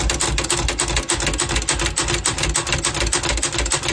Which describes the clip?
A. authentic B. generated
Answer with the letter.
A